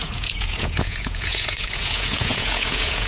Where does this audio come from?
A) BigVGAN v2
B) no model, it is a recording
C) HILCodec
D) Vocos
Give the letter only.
D